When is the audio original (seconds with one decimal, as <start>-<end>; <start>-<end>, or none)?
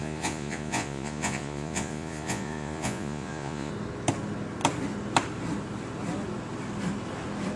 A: 3.7-7.6